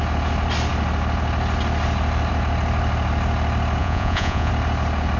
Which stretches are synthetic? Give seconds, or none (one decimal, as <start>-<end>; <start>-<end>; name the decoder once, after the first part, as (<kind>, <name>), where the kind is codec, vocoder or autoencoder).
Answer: 3.8-4.5 (vocoder, Vocos)